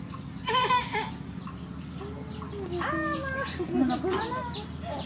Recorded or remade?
recorded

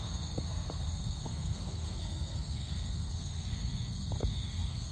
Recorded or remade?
remade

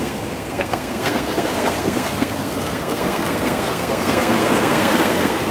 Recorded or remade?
remade